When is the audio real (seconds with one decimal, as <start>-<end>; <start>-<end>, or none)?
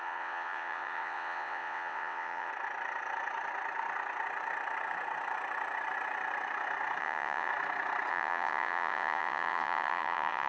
2.5-7.0; 7.5-8.1